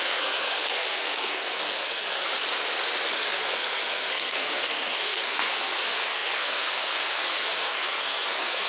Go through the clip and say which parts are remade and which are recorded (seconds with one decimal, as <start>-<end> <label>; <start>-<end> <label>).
0.0-2.3 remade; 2.3-3.1 recorded; 3.1-8.7 remade